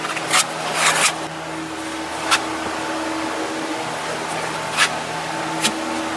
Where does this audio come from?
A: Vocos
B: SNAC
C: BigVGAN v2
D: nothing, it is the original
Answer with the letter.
D